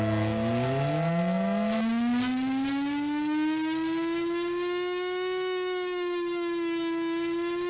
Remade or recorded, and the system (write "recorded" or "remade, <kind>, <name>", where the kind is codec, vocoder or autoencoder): recorded